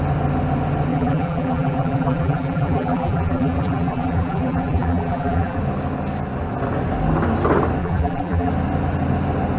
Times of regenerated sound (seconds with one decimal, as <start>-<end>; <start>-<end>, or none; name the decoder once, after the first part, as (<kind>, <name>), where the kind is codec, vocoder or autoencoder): 0.9-5.6 (vocoder, BigVGAN v2); 7.8-8.5